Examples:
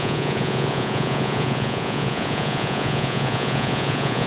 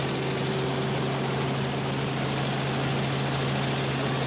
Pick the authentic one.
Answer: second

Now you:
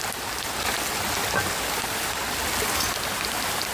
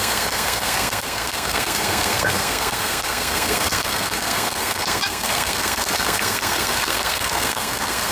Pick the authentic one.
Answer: first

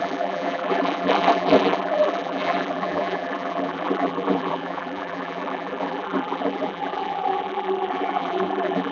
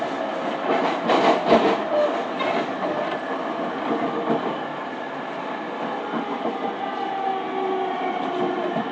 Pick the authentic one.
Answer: second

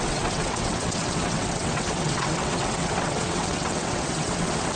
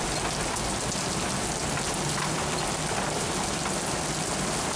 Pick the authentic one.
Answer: second